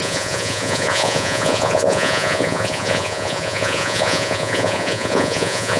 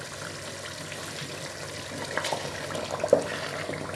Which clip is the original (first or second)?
second